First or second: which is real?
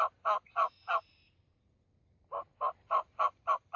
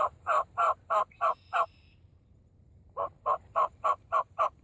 first